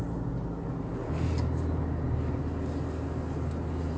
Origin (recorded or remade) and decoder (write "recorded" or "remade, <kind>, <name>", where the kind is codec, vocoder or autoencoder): recorded